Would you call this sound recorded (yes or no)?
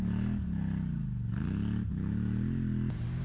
yes